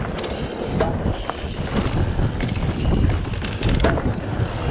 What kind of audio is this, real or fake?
real